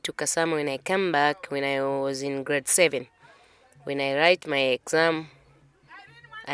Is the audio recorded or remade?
recorded